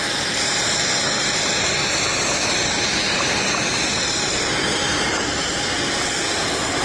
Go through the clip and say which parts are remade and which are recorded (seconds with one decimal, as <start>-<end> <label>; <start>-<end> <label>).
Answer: 0.0-6.8 recorded